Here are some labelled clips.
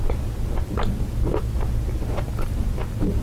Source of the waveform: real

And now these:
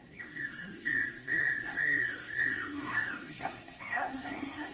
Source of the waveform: fake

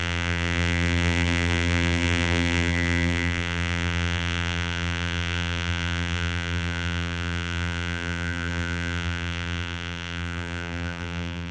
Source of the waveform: fake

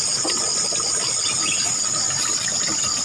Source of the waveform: real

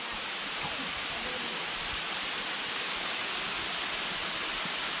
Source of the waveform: real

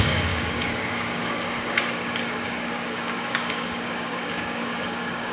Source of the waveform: fake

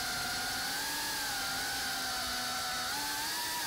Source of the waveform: real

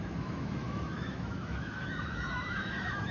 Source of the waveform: fake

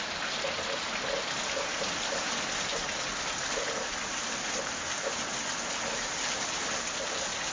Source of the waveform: real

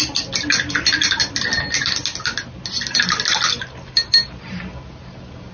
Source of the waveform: real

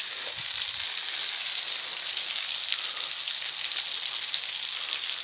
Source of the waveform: real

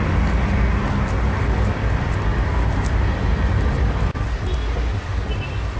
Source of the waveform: real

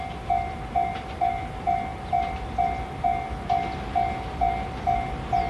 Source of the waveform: real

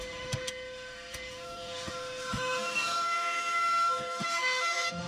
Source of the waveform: fake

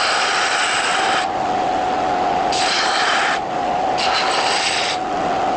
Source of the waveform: real